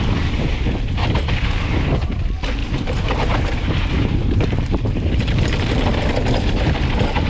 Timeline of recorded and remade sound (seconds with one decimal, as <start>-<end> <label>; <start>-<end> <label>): 0.0-2.6 recorded; 2.6-6.0 remade; 6.0-7.3 recorded